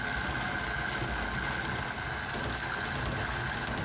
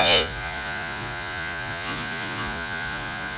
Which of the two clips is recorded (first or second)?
first